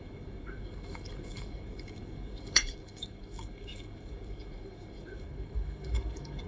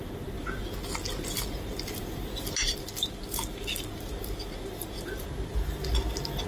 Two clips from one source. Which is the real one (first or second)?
second